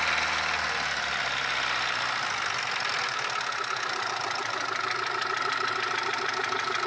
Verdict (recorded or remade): recorded